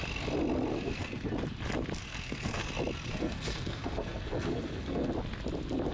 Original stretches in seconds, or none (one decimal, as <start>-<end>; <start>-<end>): 0.0-0.7; 1.3-2.0; 2.7-3.1; 5.1-5.9